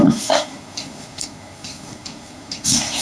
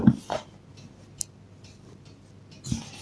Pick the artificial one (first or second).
first